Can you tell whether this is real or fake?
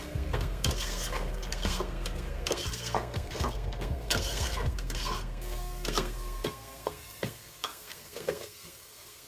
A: fake